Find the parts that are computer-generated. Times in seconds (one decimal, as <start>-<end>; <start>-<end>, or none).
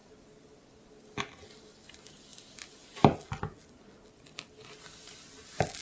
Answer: none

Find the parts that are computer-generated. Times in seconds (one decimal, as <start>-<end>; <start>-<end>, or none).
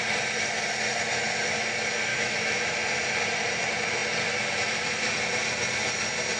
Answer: 2.1-2.7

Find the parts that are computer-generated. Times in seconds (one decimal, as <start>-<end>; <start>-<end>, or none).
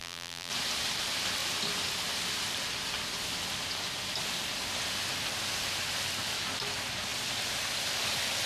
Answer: 0.0-0.5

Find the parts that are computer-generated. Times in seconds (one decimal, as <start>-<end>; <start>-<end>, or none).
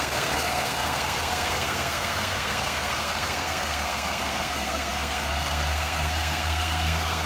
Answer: 0.0-7.3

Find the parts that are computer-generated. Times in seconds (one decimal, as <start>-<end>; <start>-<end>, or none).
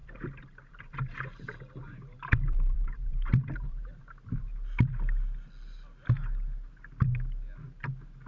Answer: 0.0-3.9